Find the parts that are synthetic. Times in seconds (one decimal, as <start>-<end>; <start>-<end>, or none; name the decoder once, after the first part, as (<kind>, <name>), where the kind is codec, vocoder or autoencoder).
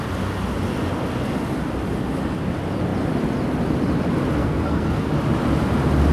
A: 4.4-5.1 (codec, SNAC)